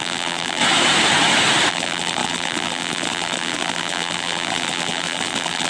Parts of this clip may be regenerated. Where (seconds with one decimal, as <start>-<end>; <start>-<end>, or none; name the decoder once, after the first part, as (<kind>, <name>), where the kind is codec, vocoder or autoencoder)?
0.0-0.6 (vocoder, BigVGAN v2); 1.7-5.7